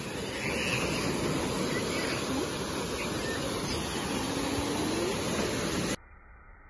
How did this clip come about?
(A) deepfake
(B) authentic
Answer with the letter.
B